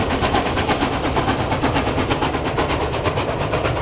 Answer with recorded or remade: remade